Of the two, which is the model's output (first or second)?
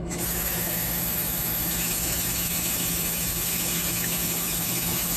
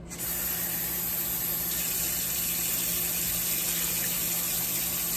first